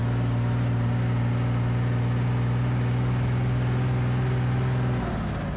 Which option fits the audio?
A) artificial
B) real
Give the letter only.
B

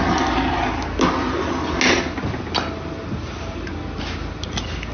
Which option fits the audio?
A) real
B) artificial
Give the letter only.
A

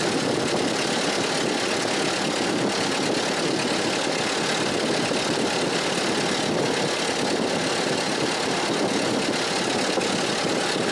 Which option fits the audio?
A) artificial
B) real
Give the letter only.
B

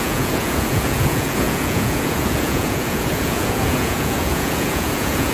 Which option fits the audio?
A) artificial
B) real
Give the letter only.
A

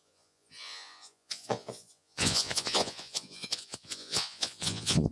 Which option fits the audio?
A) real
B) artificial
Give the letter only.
B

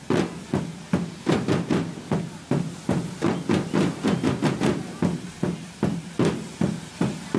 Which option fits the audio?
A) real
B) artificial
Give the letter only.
A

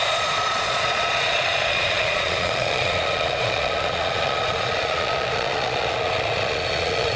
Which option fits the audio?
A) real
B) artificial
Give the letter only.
B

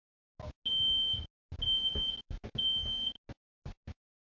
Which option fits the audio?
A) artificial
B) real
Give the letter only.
B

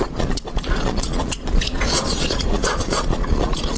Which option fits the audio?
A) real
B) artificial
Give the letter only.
B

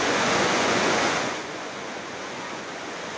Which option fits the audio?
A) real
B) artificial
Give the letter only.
B